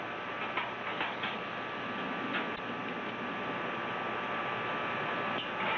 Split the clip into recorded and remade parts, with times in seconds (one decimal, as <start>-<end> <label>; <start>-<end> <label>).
0.0-0.9 recorded; 0.9-1.4 remade; 1.4-5.8 recorded